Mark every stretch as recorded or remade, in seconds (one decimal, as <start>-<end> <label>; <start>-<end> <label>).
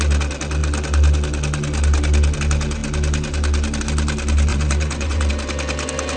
0.0-4.5 recorded; 4.5-5.3 remade; 5.3-6.2 recorded